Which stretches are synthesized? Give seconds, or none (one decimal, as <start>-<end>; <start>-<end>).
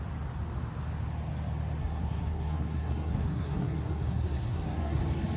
1.8-5.0